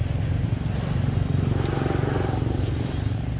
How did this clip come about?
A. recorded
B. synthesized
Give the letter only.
A